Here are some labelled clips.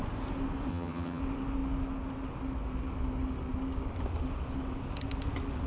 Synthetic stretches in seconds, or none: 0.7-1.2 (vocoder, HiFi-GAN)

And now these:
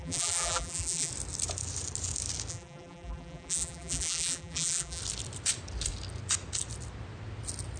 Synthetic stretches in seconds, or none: 0.0-1.1 (vocoder, BigVGAN v2); 2.5-5.0

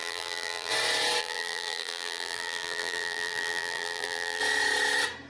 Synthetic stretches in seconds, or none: 0.0-0.7 (vocoder, BigVGAN v2); 1.2-4.4

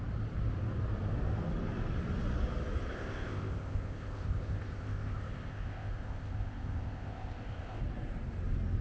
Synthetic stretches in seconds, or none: 2.9-7.8 (codec, ZipCodec)

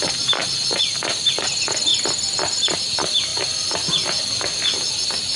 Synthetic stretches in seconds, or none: 3.3-4.4 (vocoder, BigVGAN v2)